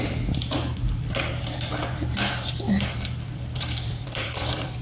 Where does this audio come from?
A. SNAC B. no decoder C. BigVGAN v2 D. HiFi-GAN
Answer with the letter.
C